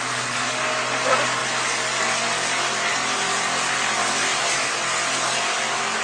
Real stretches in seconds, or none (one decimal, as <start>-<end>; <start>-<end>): 0.0-6.0